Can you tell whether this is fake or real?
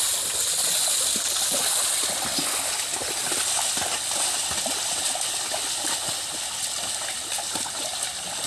real